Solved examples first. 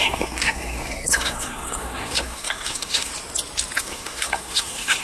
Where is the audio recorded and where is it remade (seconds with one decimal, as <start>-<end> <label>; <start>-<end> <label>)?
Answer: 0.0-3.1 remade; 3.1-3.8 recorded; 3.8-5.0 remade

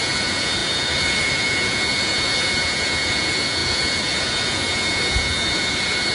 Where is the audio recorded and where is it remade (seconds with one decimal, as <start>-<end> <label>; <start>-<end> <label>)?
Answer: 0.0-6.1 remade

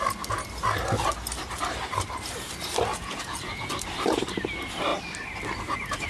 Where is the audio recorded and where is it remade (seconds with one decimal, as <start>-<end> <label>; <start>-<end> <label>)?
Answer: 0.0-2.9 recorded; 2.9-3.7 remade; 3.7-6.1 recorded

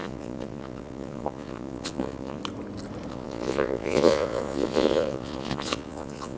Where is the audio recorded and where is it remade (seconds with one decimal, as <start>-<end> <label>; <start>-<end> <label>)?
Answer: 0.0-2.4 remade; 2.4-3.1 recorded; 3.1-6.4 remade